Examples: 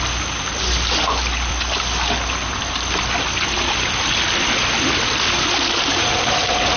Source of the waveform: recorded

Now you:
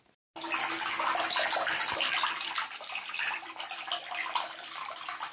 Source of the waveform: recorded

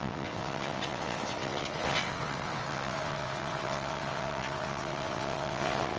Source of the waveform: remade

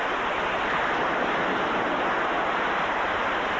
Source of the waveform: recorded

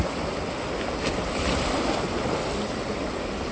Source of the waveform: recorded